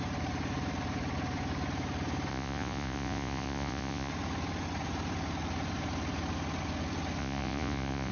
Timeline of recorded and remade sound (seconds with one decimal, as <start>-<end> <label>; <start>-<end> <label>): 0.0-2.3 recorded; 2.3-4.1 remade; 4.1-7.2 recorded; 7.2-8.1 remade